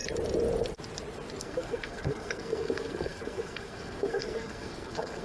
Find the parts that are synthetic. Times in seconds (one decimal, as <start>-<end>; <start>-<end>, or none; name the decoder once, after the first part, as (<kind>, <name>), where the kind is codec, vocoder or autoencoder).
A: 1.4-5.2 (codec, SNAC)